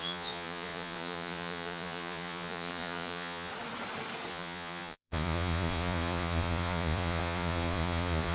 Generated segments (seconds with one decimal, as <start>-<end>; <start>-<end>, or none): 0.0-3.5; 4.3-8.3